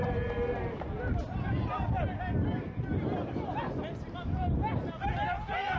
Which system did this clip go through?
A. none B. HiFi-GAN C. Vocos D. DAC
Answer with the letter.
A